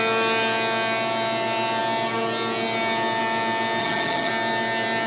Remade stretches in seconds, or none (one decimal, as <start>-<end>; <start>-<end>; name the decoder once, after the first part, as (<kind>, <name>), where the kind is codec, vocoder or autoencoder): 3.8-4.3 (vocoder, HiFi-GAN)